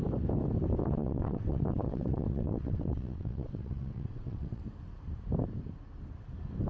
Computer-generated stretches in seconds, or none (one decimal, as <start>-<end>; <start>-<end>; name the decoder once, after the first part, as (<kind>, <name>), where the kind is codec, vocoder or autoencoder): 0.8-4.6 (vocoder, WaveNeXt)